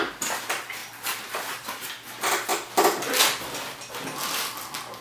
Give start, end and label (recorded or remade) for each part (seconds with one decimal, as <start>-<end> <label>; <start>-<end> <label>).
0.0-5.0 recorded

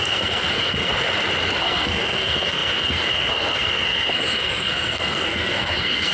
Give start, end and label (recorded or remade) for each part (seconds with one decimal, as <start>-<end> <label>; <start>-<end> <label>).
0.0-0.9 remade; 0.9-1.6 recorded; 1.6-6.1 remade

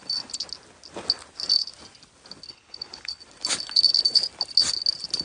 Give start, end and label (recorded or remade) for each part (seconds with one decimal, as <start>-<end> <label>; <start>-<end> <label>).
0.0-2.5 recorded; 2.5-3.2 remade; 3.2-5.2 recorded

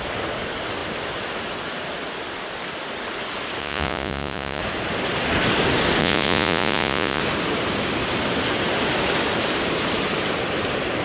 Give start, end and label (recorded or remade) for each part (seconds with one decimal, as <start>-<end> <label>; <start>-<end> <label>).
0.0-3.6 recorded; 3.6-4.6 remade; 4.6-6.0 recorded; 6.0-7.2 remade; 7.2-11.0 recorded

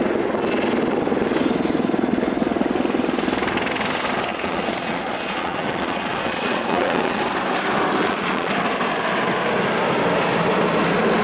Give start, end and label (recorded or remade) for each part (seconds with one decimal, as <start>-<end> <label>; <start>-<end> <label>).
0.0-4.3 recorded; 4.3-7.2 remade; 7.2-8.0 recorded; 8.0-8.5 remade; 8.5-11.2 recorded